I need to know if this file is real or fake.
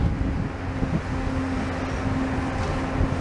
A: real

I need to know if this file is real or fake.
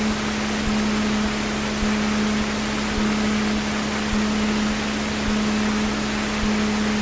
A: real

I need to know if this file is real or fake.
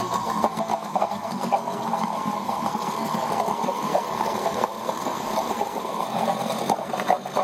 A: fake